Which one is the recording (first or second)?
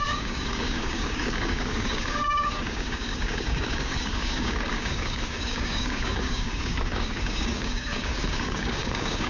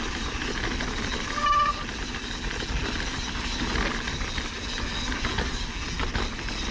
second